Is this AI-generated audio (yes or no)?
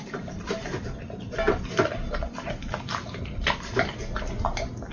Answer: no